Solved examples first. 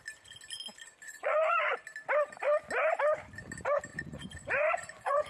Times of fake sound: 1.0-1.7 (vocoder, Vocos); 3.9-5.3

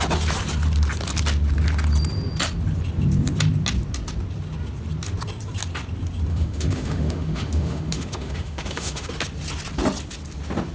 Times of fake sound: 6.3-9.1 (autoencoder, DAC-VAE)

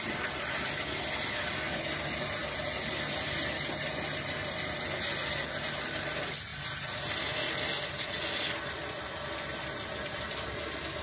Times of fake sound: none

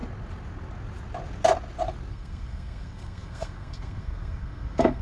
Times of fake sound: 2.1-5.0 (codec, SNAC)

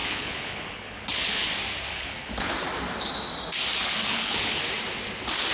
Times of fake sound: 0.0-1.5 (codec, HILCodec); 1.9-2.5; 3.8-4.6

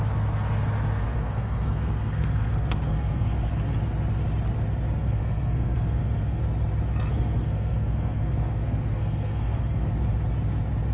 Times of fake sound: 1.0-3.5 (codec, SNAC); 5.0-6.4; 7.1-9.9

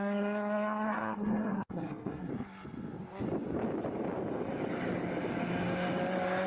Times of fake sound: 0.0-2.3 (codec, SNAC)